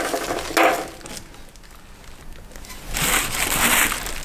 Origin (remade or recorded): recorded